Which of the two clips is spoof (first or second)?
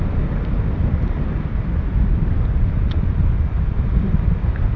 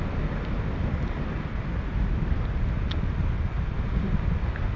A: first